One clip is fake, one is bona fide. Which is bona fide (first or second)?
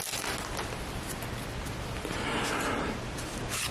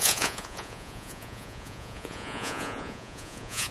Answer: first